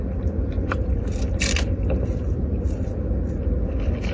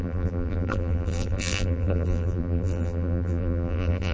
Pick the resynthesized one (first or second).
second